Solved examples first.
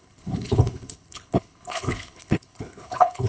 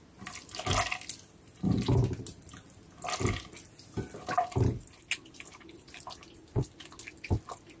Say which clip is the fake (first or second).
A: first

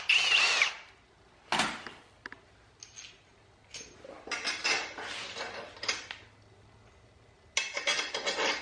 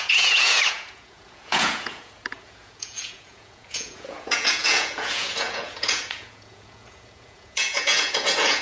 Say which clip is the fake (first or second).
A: second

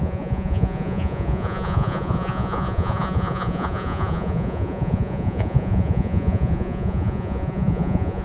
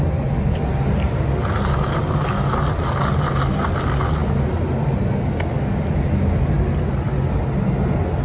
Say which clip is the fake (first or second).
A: first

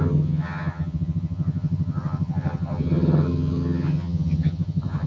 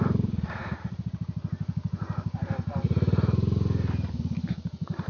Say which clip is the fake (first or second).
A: first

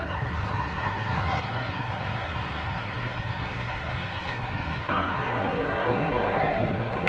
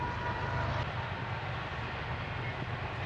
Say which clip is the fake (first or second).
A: first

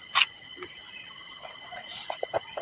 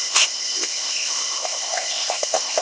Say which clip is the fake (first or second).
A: second